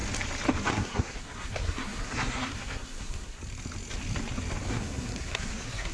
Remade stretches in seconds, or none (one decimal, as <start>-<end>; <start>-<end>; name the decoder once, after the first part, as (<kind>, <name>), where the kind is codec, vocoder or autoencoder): 0.7-3.4 (codec, SNAC); 4.7-5.9